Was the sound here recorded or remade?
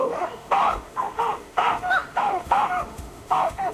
remade